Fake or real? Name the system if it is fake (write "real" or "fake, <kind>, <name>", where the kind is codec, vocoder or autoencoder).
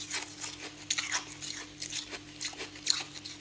real